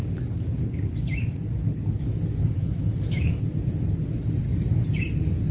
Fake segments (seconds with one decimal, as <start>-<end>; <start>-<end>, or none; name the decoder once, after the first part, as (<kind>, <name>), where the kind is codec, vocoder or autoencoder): 2.6-3.4 (autoencoder, DAC-VAE)